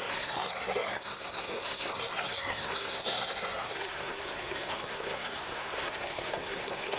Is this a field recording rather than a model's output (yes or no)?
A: no